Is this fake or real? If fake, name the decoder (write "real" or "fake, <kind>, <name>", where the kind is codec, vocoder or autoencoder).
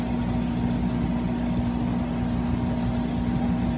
real